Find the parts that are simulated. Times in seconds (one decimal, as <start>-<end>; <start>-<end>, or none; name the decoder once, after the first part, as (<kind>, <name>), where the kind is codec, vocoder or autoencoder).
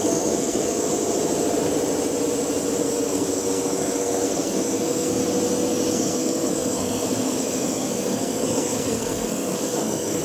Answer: 0.0-0.9 (codec, SNAC); 2.8-5.2; 5.9-10.2